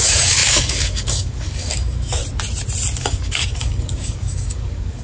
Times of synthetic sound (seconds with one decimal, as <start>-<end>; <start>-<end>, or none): 0.0-2.2; 3.0-5.0